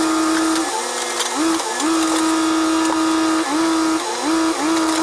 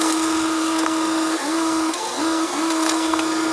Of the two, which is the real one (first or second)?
first